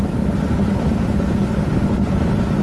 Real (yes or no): no